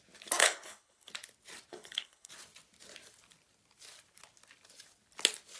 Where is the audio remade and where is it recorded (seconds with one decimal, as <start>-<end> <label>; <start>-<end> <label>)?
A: 0.0-0.4 recorded; 0.4-1.1 remade; 1.1-1.7 recorded; 1.7-2.3 remade; 2.3-5.6 recorded